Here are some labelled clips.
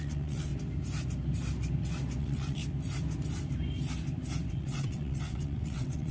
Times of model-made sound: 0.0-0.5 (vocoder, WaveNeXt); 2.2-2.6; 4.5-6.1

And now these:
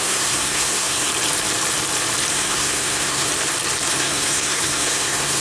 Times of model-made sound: 0.0-1.1 (codec, SNAC); 2.3-3.3; 3.9-5.4

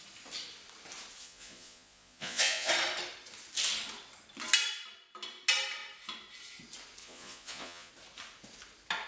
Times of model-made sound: 1.2-2.7 (vocoder, Vocos); 7.0-7.9